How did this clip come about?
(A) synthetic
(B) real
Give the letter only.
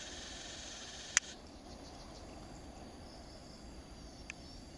B